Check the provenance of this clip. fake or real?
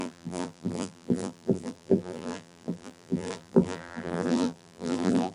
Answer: fake